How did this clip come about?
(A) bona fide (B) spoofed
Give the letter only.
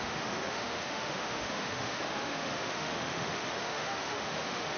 B